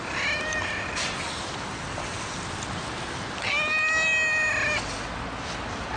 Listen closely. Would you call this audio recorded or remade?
recorded